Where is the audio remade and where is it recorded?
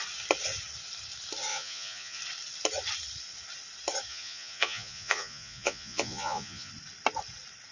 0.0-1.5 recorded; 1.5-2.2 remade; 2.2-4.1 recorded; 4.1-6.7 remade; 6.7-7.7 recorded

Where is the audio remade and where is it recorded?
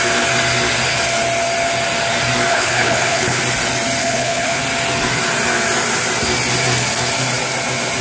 0.0-2.5 recorded; 2.5-3.4 remade; 3.4-4.0 recorded; 4.0-4.6 remade; 4.6-8.0 recorded